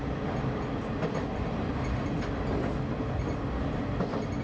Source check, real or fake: real